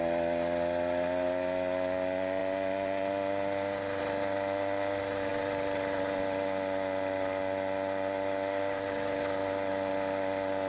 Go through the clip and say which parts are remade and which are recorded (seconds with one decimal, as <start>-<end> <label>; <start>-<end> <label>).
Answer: 0.0-10.7 recorded